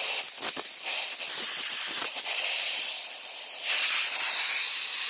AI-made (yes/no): no